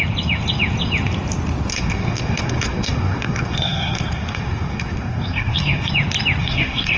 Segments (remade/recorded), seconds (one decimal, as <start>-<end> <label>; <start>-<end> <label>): 0.0-1.7 recorded; 1.7-5.9 remade; 5.9-6.4 recorded; 6.4-7.0 remade